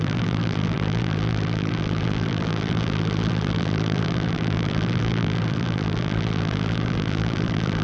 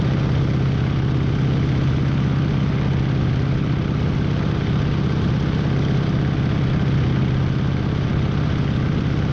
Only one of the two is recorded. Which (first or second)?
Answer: second